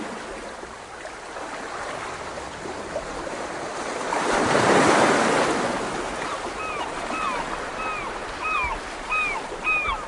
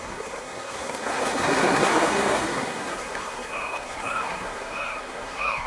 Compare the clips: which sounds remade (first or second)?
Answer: second